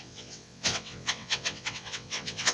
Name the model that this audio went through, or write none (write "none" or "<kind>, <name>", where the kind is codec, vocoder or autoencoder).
vocoder, WaveNeXt